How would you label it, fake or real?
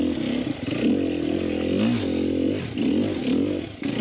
real